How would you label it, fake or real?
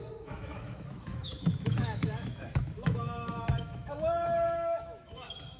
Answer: fake